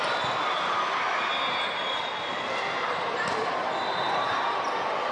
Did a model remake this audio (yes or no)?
no